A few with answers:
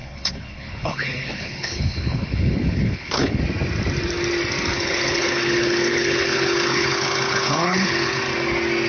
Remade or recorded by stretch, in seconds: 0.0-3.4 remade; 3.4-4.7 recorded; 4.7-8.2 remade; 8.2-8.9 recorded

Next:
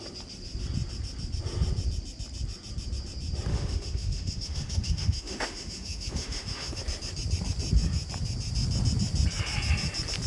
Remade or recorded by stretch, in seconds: 0.0-3.5 recorded; 3.5-6.8 remade; 6.8-10.3 recorded

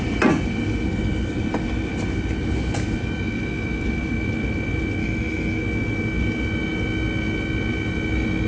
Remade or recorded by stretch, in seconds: 0.0-5.0 recorded; 5.0-5.6 remade; 5.6-8.5 recorded

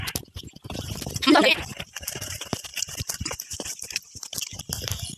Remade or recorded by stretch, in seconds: 0.0-1.7 recorded; 1.7-2.3 remade; 2.3-5.2 recorded

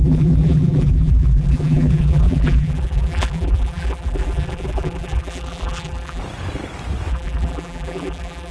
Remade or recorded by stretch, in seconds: 0.0-6.2 remade; 6.2-7.1 recorded; 7.1-8.5 remade

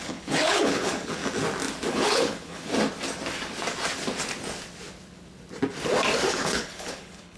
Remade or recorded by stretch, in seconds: 0.0-1.2 remade; 1.2-1.9 recorded; 1.9-2.7 remade; 2.7-6.4 recorded; 6.4-7.4 remade

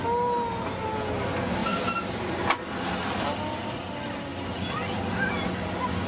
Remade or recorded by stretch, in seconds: 0.0-6.1 recorded